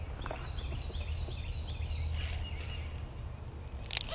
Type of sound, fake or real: real